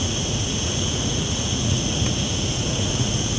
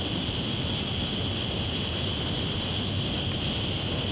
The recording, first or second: second